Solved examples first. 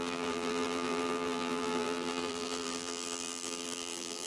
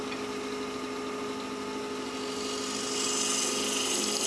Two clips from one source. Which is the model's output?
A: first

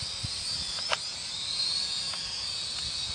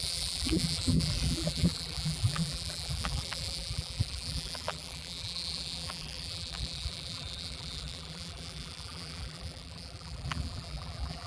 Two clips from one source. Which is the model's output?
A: second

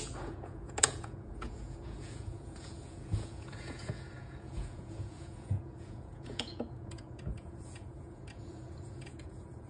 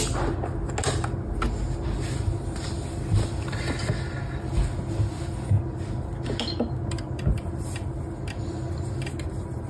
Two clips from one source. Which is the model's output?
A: first